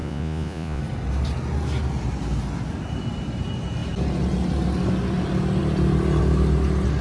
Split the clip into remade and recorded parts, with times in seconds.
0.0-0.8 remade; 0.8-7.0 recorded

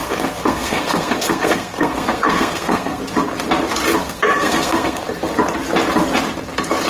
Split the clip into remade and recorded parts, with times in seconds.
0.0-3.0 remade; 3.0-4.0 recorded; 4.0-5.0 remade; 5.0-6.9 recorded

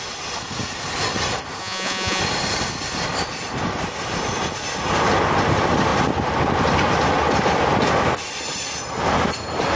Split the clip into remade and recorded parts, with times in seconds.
0.0-1.6 recorded; 1.6-2.2 remade; 2.2-9.8 recorded